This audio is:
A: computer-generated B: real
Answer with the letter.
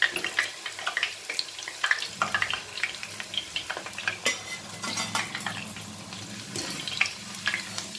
B